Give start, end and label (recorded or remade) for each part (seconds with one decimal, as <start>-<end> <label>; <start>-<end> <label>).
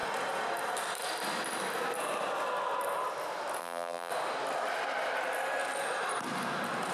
0.0-3.6 recorded; 3.6-4.1 remade; 4.1-6.9 recorded